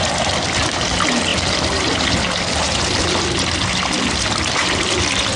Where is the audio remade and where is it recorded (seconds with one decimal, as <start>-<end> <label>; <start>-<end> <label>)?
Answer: 0.0-5.4 recorded